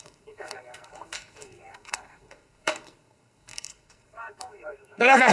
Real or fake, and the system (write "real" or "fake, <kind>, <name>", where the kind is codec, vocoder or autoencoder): fake, codec, SNAC